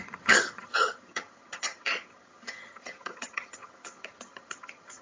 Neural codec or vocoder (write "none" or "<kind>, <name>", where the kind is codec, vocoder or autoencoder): vocoder, HiFi-GAN